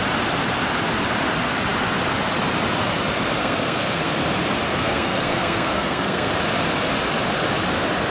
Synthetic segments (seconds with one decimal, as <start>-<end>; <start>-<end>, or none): 3.4-4.1; 4.7-6.3